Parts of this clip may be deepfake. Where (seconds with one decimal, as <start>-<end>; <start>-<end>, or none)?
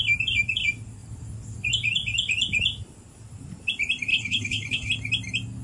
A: 4.1-4.9